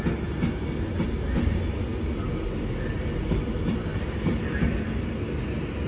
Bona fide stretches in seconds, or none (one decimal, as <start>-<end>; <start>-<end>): 0.0-5.9